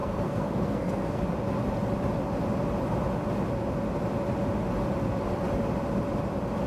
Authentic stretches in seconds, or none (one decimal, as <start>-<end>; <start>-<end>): 1.2-6.7